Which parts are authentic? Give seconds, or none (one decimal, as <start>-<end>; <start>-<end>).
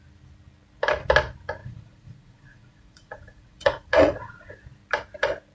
0.0-1.6; 4.6-5.5